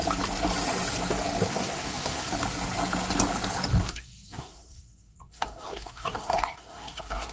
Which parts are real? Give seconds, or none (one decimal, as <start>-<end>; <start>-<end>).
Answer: 0.0-1.5; 2.3-3.8

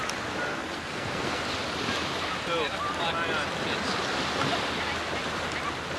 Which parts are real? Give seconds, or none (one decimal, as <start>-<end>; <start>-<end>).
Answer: 0.0-0.5; 1.4-6.0

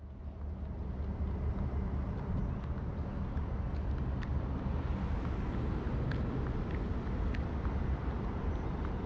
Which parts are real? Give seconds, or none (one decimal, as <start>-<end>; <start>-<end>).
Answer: 0.0-9.1